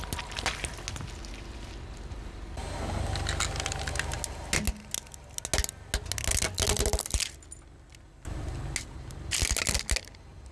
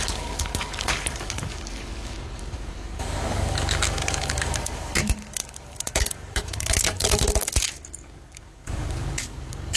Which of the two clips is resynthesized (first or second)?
second